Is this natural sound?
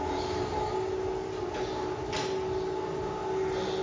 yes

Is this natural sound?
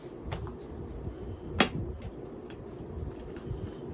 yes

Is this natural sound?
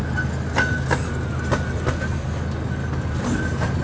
yes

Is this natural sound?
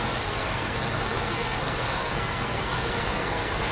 no